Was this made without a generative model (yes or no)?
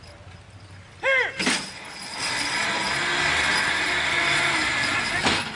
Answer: yes